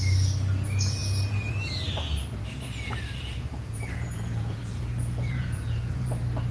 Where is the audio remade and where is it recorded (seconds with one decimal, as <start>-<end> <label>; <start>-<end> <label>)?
0.0-3.3 recorded; 3.3-6.1 remade; 6.1-6.5 recorded